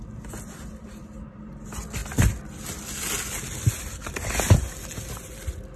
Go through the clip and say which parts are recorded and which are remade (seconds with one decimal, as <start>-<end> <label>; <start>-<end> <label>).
0.0-5.8 recorded